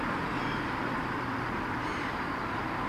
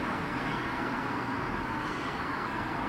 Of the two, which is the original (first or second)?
first